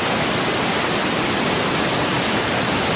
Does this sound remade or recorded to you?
recorded